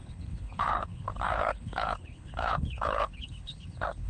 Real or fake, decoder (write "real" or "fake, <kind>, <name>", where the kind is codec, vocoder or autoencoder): fake, codec, HILCodec